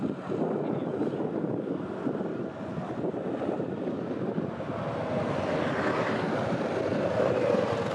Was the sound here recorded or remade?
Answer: recorded